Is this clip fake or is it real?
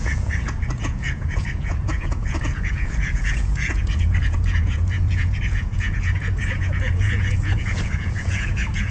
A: fake